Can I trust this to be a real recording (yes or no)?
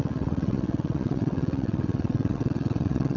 no